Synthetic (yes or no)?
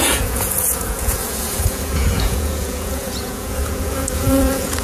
yes